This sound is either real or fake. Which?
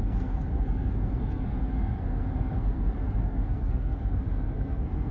fake